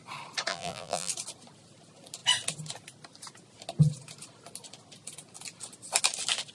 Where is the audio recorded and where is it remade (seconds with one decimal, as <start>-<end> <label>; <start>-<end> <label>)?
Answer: 0.0-0.5 recorded; 0.5-1.1 remade; 1.1-6.5 recorded